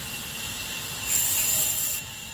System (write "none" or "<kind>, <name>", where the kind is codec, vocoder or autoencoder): none